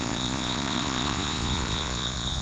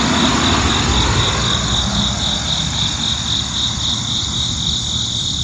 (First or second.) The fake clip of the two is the first